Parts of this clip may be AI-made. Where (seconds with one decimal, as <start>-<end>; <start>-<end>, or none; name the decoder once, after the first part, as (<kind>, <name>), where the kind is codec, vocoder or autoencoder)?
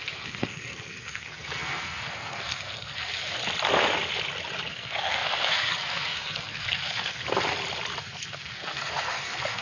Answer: 0.0-3.4 (codec, SNAC); 4.7-7.2; 8.0-9.6